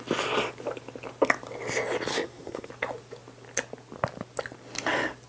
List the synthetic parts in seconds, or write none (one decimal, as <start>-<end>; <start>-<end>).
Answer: 2.1-2.7